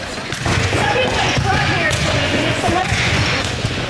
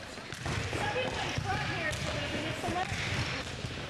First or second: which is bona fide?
second